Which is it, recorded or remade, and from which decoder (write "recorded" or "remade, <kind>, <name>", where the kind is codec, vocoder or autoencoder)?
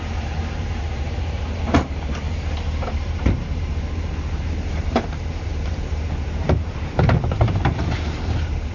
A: remade, vocoder, BigVGAN v2